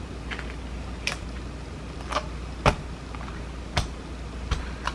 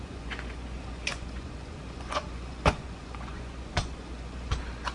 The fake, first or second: second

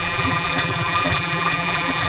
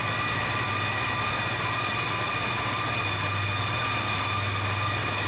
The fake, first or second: first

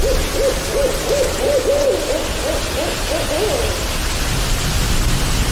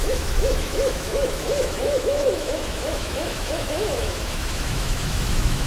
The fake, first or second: second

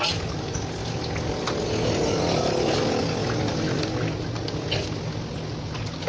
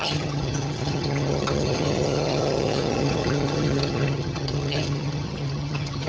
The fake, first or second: second